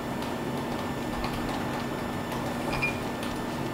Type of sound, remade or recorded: recorded